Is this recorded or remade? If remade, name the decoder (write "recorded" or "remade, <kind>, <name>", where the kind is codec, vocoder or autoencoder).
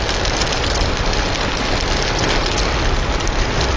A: recorded